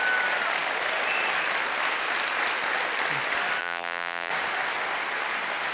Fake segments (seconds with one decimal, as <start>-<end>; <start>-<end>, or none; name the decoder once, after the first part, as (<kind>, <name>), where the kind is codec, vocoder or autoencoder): 3.6-4.3 (vocoder, BigVGAN v2)